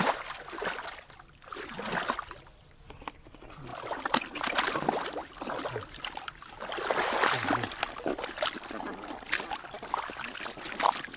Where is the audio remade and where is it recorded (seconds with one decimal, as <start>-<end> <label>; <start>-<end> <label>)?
0.0-11.2 recorded

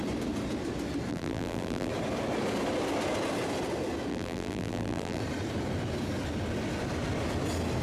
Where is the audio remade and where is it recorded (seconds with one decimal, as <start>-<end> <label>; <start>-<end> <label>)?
0.0-1.1 recorded; 1.1-1.9 remade; 1.9-4.1 recorded; 4.1-5.2 remade; 5.2-7.8 recorded